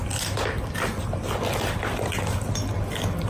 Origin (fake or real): real